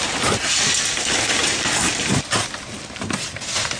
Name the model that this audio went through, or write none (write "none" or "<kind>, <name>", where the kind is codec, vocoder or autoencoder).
none